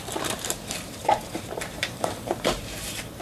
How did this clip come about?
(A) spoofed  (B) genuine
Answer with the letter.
A